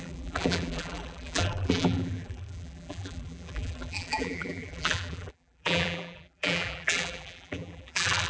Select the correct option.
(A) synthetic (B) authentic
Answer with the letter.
A